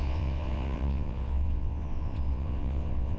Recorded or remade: remade